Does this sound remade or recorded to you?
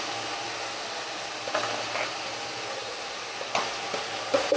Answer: recorded